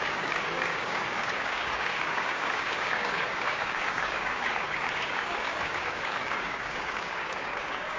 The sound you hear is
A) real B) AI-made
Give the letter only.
B